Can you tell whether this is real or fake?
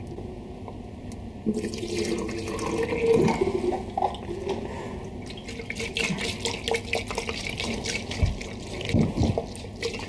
real